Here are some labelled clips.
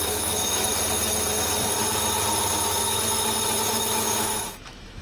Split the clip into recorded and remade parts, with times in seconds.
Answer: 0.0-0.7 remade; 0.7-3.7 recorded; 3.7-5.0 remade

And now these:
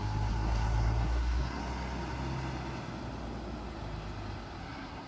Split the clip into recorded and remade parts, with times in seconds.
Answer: 0.0-1.6 remade; 1.6-4.6 recorded; 4.6-5.1 remade